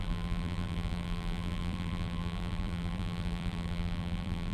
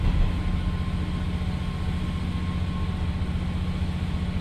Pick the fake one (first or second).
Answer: first